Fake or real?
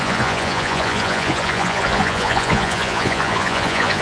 fake